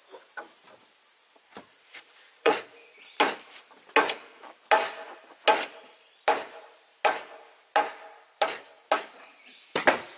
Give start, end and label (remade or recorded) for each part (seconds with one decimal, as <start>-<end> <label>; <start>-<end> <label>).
0.0-1.7 recorded; 1.7-3.2 remade; 3.2-10.2 recorded